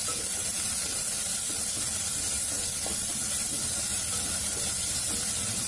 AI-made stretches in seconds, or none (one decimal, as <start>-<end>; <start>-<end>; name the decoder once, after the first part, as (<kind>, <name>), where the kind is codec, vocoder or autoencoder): none